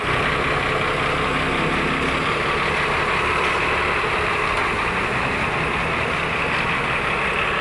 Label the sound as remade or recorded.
recorded